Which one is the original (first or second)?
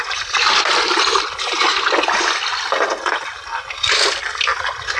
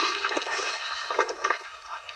first